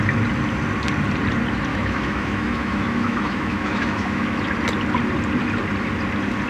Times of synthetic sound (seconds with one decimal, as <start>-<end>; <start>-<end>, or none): 1.7-4.4